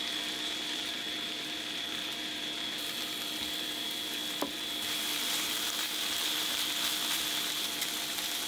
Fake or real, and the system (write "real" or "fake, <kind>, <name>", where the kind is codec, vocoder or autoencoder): fake, vocoder, BigVGAN v2